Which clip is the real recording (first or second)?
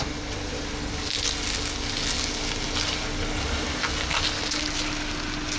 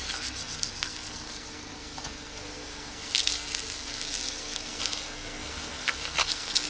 first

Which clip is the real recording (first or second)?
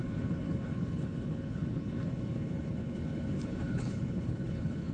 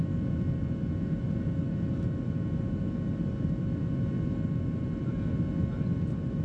second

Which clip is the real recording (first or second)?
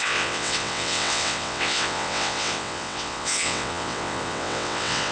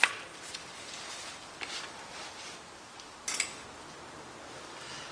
second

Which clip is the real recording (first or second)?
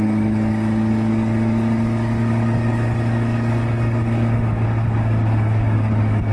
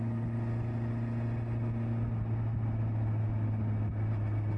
second